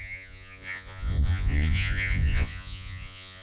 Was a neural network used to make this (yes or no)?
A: yes